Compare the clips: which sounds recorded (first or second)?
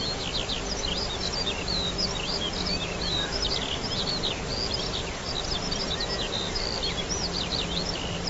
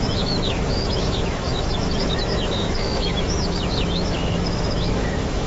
first